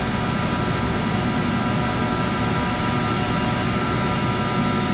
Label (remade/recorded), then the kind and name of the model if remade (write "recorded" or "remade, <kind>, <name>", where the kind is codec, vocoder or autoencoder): recorded